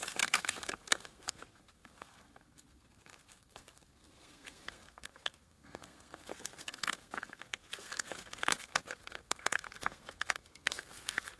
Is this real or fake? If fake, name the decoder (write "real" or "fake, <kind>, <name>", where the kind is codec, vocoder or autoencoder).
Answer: fake, codec, SNAC